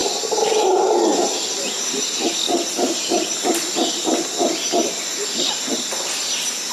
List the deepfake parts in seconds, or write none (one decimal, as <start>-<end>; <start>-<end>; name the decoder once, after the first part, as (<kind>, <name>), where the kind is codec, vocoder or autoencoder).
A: none